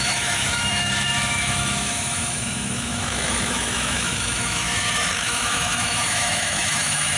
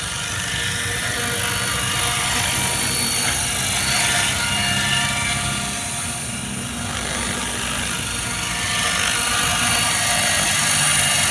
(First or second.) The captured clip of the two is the second